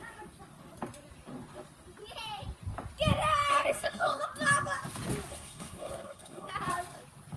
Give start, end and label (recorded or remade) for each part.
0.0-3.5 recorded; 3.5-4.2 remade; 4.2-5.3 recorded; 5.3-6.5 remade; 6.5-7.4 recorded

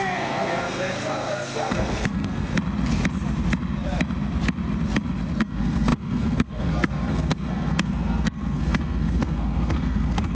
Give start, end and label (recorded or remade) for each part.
0.0-2.5 remade; 2.5-5.4 recorded; 5.4-10.3 remade

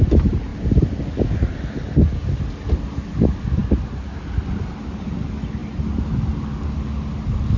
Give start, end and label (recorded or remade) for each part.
0.0-7.6 recorded

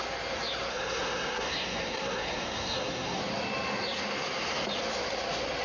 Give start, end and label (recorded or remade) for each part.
0.0-0.7 recorded; 0.7-3.2 remade; 3.2-5.6 recorded